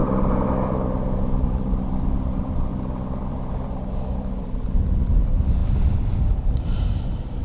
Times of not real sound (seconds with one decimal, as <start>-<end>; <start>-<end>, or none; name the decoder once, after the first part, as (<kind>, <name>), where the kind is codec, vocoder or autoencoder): 1.4-2.7 (vocoder, BigVGAN v2); 3.2-7.4